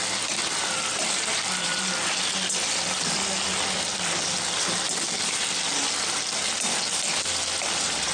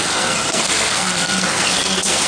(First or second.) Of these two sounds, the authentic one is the first